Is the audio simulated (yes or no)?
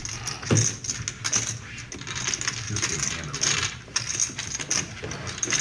no